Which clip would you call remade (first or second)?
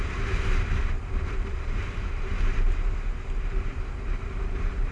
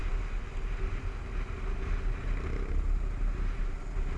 first